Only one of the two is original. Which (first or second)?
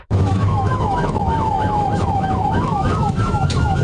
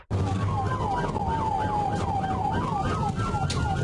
second